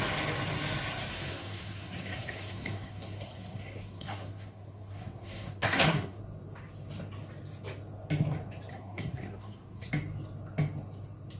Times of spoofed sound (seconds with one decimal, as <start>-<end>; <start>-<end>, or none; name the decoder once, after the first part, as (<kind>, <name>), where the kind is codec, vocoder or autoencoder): 1.1-6.2 (codec, SNAC); 8.7-9.9